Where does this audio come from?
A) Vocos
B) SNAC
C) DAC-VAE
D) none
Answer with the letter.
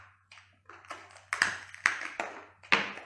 D